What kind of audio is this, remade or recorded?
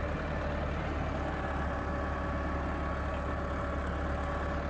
recorded